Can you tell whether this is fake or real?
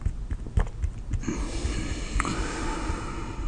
real